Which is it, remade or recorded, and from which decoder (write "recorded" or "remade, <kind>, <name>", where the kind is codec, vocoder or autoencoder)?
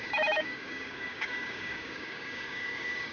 remade, codec, DAC